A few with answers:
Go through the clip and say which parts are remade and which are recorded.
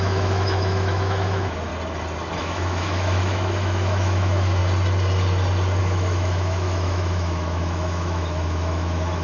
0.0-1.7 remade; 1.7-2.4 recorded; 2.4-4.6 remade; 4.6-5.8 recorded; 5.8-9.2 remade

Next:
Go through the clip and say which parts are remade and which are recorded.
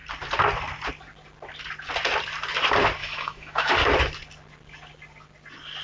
0.0-3.0 recorded; 3.0-3.7 remade; 3.7-5.8 recorded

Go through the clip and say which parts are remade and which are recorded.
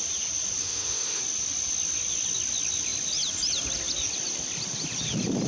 0.0-0.6 recorded; 0.6-1.2 remade; 1.2-5.5 recorded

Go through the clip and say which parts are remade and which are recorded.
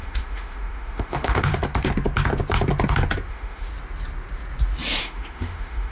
0.0-1.5 remade; 1.5-3.3 recorded; 3.3-3.7 remade; 3.7-5.0 recorded; 5.0-5.9 remade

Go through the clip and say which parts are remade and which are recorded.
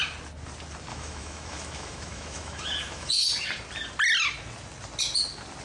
0.0-0.9 recorded; 0.9-3.1 remade; 3.1-5.6 recorded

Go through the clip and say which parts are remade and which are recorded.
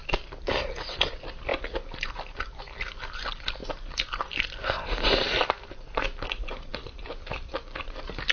0.0-8.3 recorded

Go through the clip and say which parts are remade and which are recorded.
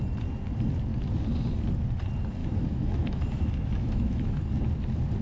0.0-2.4 recorded; 2.4-4.4 remade; 4.4-5.2 recorded